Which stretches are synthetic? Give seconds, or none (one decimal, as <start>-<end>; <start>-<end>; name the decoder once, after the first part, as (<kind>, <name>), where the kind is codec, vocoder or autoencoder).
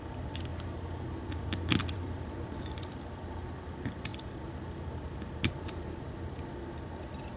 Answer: 0.0-0.5 (vocoder, BigVGAN v2); 1.2-4.1; 5.2-7.4